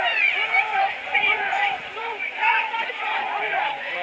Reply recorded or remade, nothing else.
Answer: remade